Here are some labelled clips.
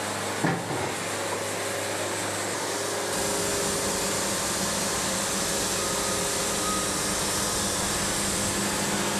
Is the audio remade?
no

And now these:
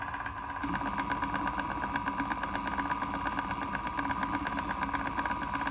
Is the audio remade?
no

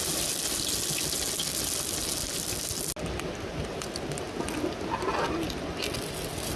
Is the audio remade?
no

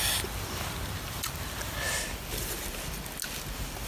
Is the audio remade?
no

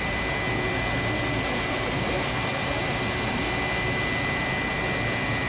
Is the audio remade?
no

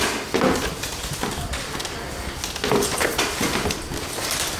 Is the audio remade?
no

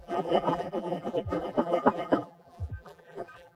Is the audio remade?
yes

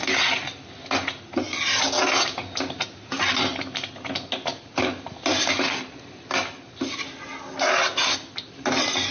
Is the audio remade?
no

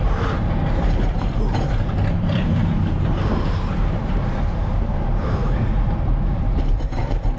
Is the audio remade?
yes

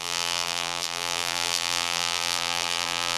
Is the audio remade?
yes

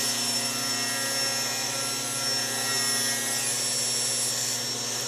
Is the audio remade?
no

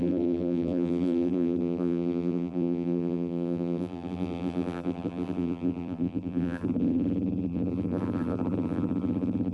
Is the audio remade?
yes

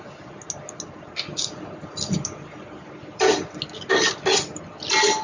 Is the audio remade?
no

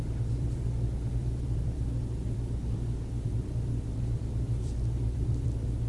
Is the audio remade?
yes